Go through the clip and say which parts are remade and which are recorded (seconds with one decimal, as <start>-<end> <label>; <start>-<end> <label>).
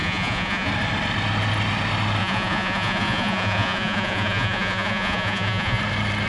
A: 0.0-0.7 remade; 0.7-2.2 recorded; 2.2-5.8 remade; 5.8-6.3 recorded